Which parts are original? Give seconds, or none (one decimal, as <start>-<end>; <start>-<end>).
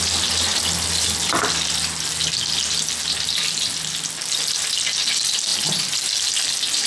0.0-6.9